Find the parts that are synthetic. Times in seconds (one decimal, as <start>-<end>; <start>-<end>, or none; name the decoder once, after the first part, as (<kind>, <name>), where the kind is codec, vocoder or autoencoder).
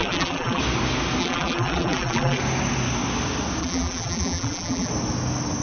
0.0-0.6 (vocoder, BigVGAN v2); 1.2-2.4; 3.6-4.9